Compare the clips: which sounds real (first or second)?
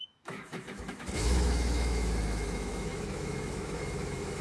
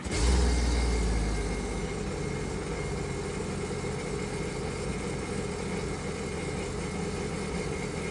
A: second